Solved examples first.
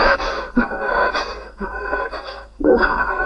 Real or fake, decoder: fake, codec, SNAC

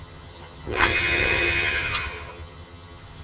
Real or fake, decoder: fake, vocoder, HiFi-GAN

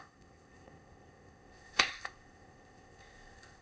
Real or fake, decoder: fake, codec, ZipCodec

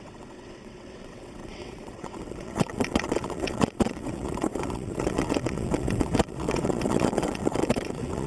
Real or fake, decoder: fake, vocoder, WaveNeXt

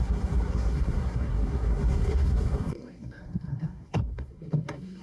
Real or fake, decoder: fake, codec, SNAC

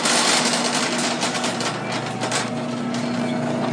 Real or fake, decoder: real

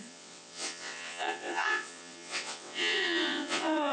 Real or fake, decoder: fake, vocoder, WaveNeXt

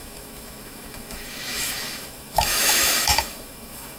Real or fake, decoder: fake, autoencoder, DAC-VAE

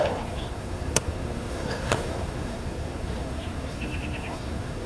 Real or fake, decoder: fake, codec, SNAC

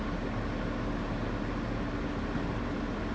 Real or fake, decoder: real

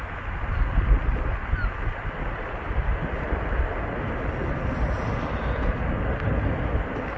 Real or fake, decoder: real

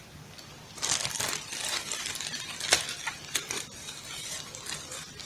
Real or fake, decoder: fake, vocoder, BigVGAN v2